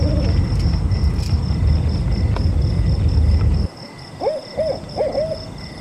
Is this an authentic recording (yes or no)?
yes